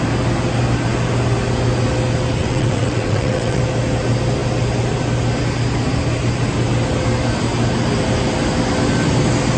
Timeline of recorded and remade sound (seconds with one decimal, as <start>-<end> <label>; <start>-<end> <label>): 0.0-2.4 recorded; 2.4-3.6 remade; 3.6-9.6 recorded